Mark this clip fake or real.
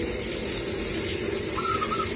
real